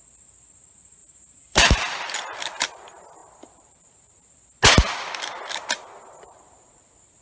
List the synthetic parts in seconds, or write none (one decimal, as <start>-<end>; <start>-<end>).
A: 1.0-2.1